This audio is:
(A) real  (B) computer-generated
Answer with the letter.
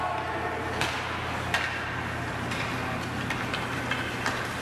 A